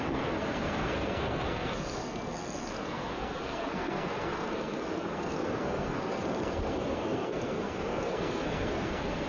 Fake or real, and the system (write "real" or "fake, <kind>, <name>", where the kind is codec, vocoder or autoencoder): fake, codec, SNAC